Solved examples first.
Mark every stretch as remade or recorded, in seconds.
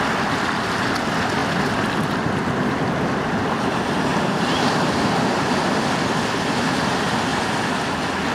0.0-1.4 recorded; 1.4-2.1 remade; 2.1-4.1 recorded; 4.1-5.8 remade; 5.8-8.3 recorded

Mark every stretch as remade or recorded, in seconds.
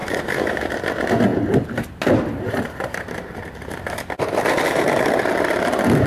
0.0-0.7 remade; 0.7-6.1 recorded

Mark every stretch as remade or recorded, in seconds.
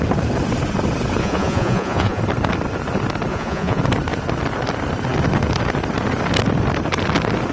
0.0-1.2 recorded; 1.2-2.2 remade; 2.2-3.3 recorded; 3.3-3.8 remade; 3.8-7.5 recorded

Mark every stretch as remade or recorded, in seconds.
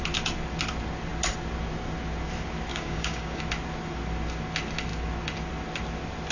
0.0-2.7 recorded; 2.7-3.4 remade; 3.4-6.3 recorded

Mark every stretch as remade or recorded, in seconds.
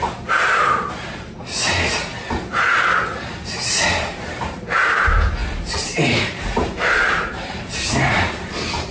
0.0-2.1 remade; 2.1-3.4 recorded; 3.4-8.9 remade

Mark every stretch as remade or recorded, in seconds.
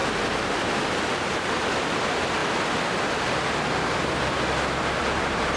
0.0-0.6 recorded; 0.6-2.4 remade; 2.4-5.0 recorded; 5.0-5.6 remade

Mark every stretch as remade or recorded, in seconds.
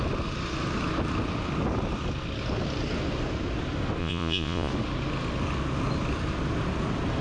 0.0-4.0 recorded; 4.0-4.7 remade; 4.7-7.2 recorded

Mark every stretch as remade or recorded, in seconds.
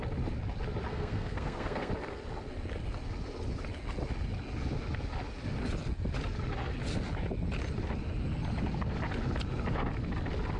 0.0-0.9 recorded; 0.9-1.9 remade; 1.9-10.6 recorded